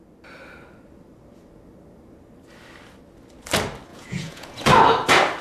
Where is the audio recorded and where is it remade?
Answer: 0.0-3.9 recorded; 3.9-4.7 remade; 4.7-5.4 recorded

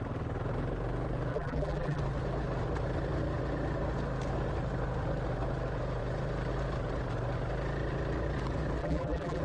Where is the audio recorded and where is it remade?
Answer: 0.0-1.3 recorded; 1.3-2.0 remade; 2.0-8.8 recorded; 8.8-9.4 remade